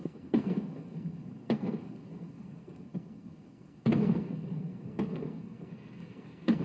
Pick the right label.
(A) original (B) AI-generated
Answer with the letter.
B